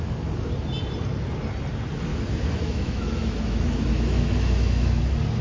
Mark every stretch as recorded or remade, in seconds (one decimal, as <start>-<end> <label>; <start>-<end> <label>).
0.0-2.1 recorded; 2.1-5.0 remade; 5.0-5.4 recorded